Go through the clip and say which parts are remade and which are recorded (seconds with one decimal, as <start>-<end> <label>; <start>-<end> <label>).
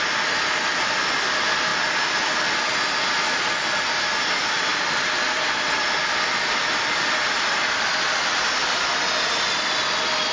0.0-4.7 recorded; 4.7-8.3 remade; 8.3-10.3 recorded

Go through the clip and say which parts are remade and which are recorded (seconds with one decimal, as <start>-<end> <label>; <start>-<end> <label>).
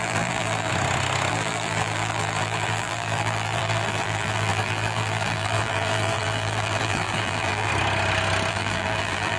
0.0-0.7 remade; 0.7-1.3 recorded; 1.3-7.7 remade; 7.7-8.5 recorded; 8.5-9.4 remade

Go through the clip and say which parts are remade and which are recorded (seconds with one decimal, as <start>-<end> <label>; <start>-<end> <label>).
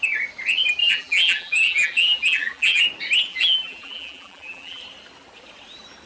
0.0-0.8 recorded; 0.8-2.8 remade; 2.8-3.3 recorded; 3.3-4.8 remade; 4.8-6.1 recorded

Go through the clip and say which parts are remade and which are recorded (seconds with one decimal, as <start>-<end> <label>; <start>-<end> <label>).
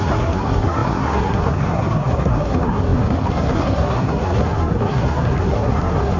0.0-6.2 remade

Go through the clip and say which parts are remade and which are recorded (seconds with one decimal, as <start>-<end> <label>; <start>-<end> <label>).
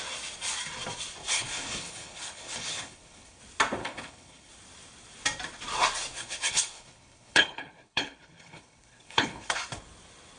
0.0-1.2 recorded; 1.2-3.4 remade; 3.4-3.8 recorded; 3.8-4.5 remade; 4.5-6.1 recorded; 6.1-9.6 remade; 9.6-10.4 recorded